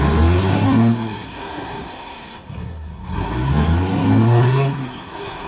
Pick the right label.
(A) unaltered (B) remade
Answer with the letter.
B